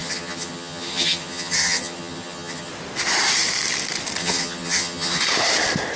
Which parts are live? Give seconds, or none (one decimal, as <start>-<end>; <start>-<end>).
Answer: 2.7-4.2; 5.2-6.0